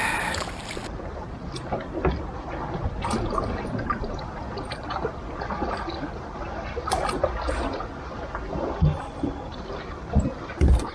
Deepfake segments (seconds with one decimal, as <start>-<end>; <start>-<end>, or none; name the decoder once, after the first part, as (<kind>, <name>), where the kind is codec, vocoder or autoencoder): none